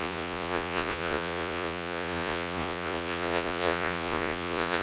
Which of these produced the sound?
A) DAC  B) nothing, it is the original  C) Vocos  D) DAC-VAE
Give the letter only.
C